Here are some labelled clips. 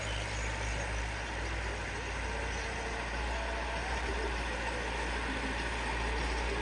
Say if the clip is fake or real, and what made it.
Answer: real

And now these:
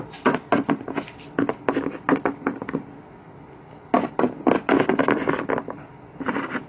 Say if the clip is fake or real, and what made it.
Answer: real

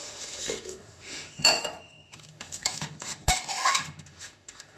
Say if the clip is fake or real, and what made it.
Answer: fake, autoencoder, DAC-VAE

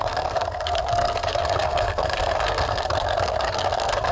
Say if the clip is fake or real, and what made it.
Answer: fake, codec, SNAC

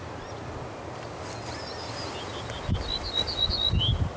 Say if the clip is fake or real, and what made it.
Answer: real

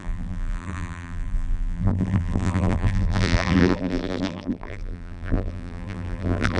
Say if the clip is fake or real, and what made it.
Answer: fake, vocoder, BigVGAN v2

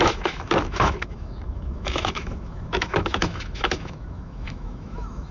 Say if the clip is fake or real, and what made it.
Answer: fake, autoencoder, DAC-VAE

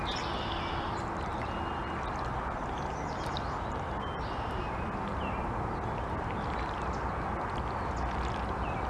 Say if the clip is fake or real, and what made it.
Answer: real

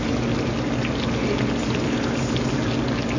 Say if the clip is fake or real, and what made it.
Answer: real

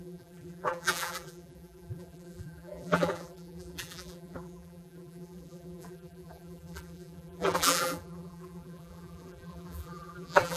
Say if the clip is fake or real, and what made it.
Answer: fake, vocoder, BigVGAN v2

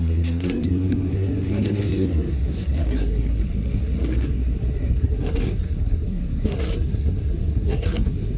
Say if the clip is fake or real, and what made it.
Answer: fake, codec, SNAC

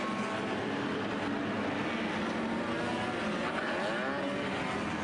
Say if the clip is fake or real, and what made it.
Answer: real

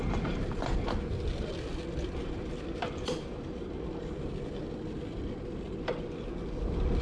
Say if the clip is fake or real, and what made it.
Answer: real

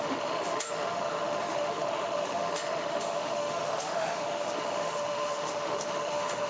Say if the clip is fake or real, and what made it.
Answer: fake, autoencoder, DAC-VAE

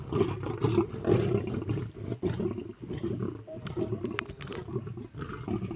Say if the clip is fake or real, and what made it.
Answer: real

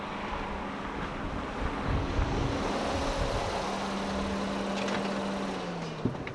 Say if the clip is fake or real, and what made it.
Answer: real